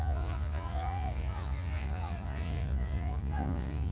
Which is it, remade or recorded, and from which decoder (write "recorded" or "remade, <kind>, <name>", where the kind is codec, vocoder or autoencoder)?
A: remade, vocoder, Vocos